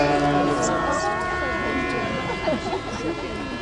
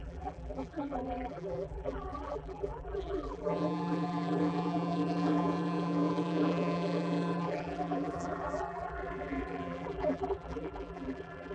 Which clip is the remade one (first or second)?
second